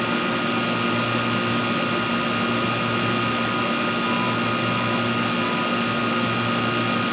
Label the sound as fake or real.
real